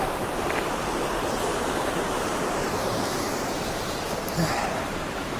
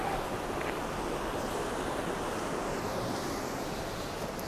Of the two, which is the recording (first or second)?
second